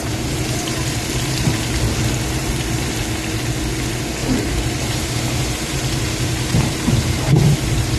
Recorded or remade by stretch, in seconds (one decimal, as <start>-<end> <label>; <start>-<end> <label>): 0.0-0.9 remade; 0.9-2.4 recorded; 2.4-2.9 remade; 2.9-4.2 recorded; 4.2-8.0 remade